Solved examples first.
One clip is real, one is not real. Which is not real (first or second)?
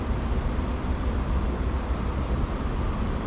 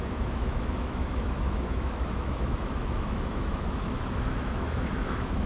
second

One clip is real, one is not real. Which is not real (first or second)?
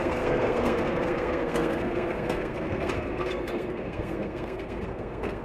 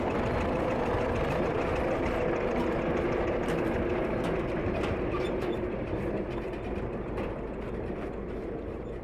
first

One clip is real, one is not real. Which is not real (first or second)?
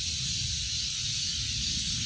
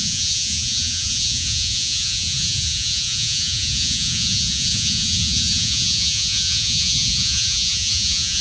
second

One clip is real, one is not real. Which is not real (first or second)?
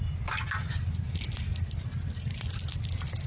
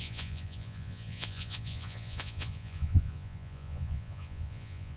second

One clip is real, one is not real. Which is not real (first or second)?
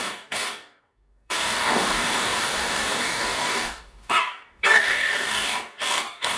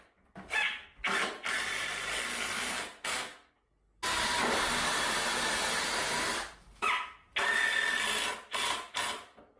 first